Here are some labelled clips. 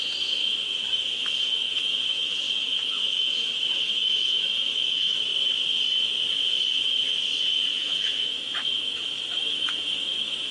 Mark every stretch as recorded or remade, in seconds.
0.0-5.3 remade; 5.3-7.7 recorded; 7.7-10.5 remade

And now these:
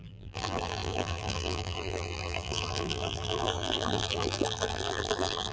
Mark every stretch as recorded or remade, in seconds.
0.0-5.5 remade

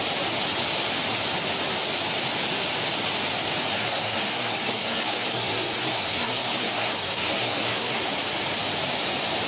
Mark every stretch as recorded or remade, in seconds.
0.0-3.7 recorded; 3.7-8.0 remade; 8.0-9.5 recorded

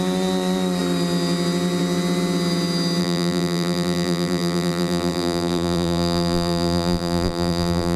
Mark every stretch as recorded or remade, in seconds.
0.0-3.0 recorded; 3.0-8.0 remade

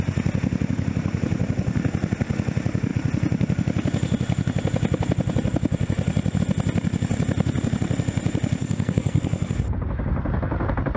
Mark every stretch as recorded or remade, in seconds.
0.0-8.6 recorded; 8.6-9.5 remade; 9.5-11.0 recorded

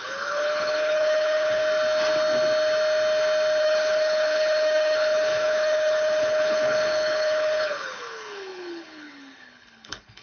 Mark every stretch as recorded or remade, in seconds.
0.0-1.6 remade; 1.6-3.6 recorded; 3.6-10.2 remade

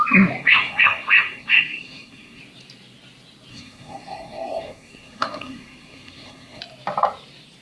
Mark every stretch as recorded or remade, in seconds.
0.0-0.4 recorded; 0.4-2.4 remade; 2.4-3.5 recorded; 3.5-6.6 remade; 6.6-7.6 recorded